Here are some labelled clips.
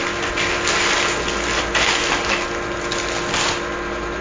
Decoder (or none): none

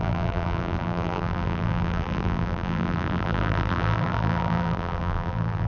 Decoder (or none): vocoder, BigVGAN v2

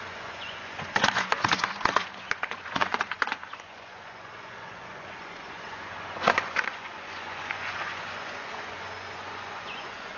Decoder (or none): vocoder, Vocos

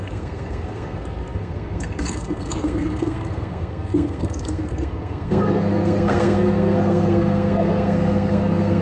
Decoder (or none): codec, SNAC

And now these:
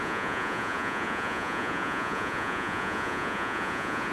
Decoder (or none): vocoder, Vocos